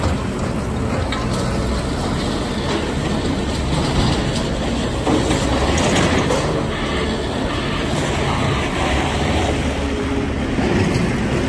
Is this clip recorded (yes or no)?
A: yes